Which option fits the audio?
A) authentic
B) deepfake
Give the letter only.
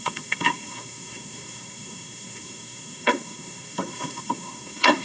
B